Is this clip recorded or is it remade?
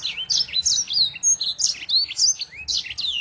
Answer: recorded